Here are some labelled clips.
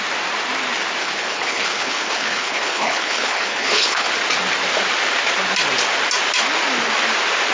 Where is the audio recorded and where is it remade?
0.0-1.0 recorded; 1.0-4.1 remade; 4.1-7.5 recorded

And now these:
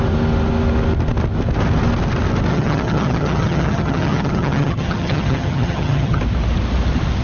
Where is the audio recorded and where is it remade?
0.0-2.5 recorded; 2.5-6.2 remade; 6.2-7.2 recorded

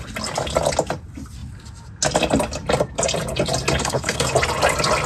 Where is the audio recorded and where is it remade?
0.0-3.8 recorded; 3.8-4.3 remade; 4.3-5.1 recorded

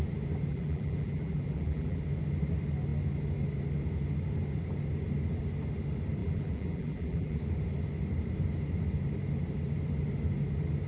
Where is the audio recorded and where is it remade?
0.0-0.5 recorded; 0.5-2.0 remade; 2.0-6.2 recorded; 6.2-7.4 remade; 7.4-10.9 recorded

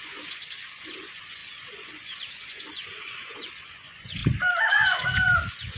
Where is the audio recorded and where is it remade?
0.0-0.4 remade; 0.4-0.9 recorded; 0.9-4.2 remade; 4.2-4.7 recorded; 4.7-5.8 remade

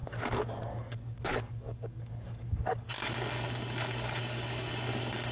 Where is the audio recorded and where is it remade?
0.0-2.9 remade; 2.9-5.3 recorded